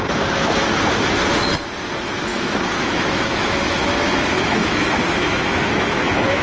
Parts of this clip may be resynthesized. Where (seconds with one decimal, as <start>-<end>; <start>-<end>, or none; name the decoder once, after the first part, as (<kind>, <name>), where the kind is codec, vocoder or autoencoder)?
2.3-6.4 (autoencoder, DAC-VAE)